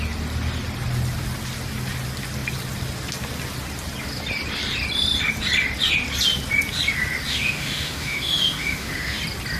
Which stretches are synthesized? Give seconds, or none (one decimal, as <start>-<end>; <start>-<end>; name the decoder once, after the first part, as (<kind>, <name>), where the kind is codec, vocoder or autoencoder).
7.3-9.2 (autoencoder, DAC-VAE)